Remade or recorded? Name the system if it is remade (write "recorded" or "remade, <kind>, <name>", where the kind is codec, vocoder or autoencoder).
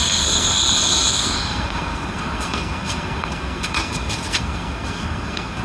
remade, codec, SNAC